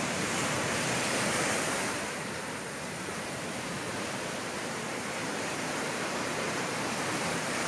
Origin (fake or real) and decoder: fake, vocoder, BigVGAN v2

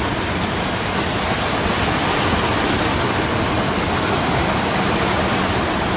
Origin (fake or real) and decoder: real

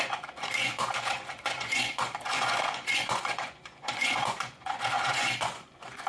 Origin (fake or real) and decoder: fake, vocoder, Vocos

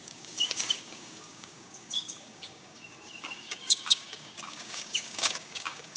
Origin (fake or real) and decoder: fake, codec, DAC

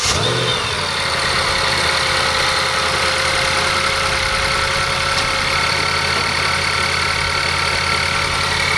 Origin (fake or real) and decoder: real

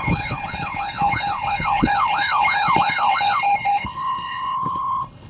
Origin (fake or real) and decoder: fake, codec, HILCodec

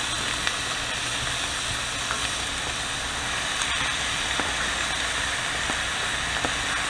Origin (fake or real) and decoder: real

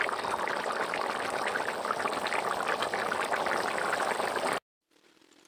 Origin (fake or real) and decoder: fake, vocoder, BigVGAN v2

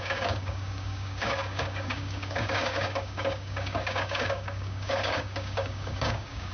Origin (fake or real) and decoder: fake, codec, DAC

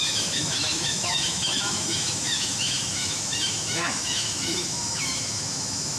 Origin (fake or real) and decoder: fake, autoencoder, DAC-VAE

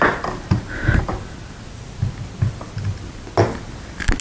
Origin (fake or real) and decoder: real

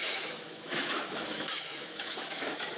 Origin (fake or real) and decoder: fake, autoencoder, DAC-VAE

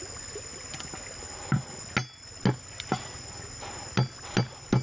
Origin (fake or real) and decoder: real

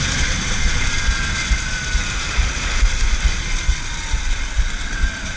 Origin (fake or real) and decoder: real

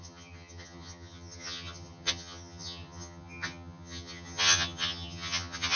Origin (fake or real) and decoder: fake, vocoder, HiFi-GAN